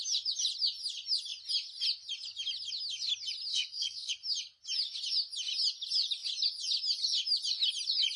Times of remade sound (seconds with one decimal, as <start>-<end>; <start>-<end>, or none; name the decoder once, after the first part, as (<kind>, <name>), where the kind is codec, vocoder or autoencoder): 3.5-4.1 (codec, SNAC)